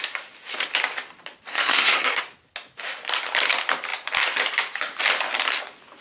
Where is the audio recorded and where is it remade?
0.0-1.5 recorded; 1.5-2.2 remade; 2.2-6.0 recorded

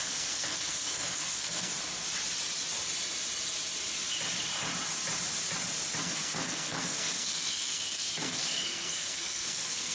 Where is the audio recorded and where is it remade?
0.0-1.7 remade; 1.7-6.0 recorded; 6.0-9.9 remade

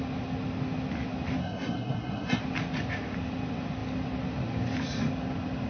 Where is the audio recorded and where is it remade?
0.0-1.4 recorded; 1.4-2.4 remade; 2.4-5.7 recorded